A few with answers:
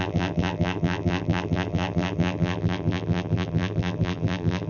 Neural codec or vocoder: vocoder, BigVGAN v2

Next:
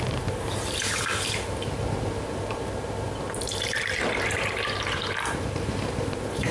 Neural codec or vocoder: vocoder, BigVGAN v2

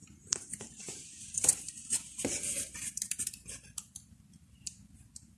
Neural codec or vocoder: vocoder, BigVGAN v2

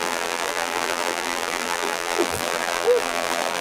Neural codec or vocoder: vocoder, BigVGAN v2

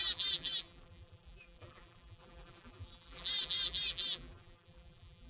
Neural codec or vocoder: vocoder, BigVGAN v2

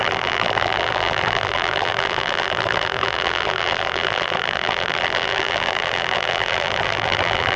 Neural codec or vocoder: vocoder, BigVGAN v2